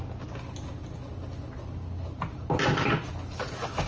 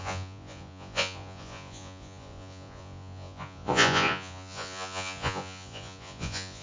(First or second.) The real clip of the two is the first